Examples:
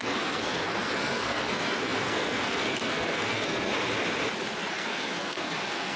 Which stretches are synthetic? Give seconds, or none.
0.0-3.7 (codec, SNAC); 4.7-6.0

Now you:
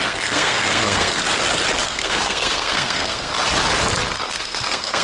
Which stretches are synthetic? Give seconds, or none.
0.0-1.2 (codec, SNAC); 1.8-3.3; 4.3-5.0

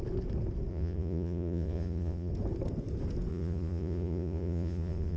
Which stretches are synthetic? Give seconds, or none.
0.7-2.3 (vocoder, Vocos); 3.3-5.2

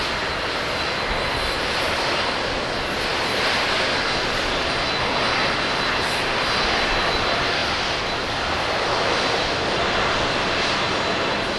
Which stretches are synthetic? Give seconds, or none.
none

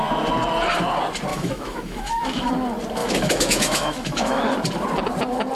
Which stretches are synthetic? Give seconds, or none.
1.3-2.5 (autoencoder, DAC-VAE); 3.0-4.5